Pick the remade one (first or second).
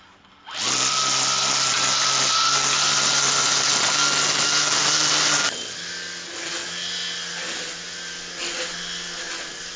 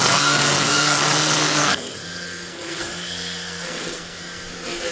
second